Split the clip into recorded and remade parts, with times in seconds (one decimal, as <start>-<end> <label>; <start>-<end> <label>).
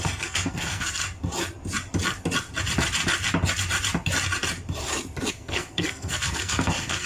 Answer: 0.0-1.0 remade; 1.0-5.3 recorded; 5.3-7.1 remade